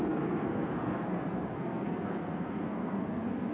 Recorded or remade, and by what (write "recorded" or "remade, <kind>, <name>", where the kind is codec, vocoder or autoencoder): remade, codec, SNAC